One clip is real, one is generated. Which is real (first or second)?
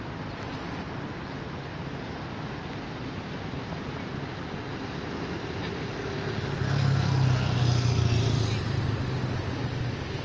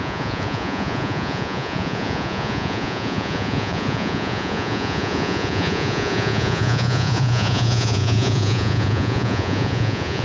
first